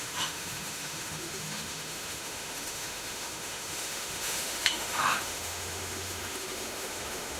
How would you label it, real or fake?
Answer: fake